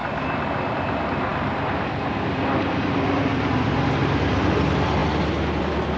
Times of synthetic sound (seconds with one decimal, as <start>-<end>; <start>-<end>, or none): none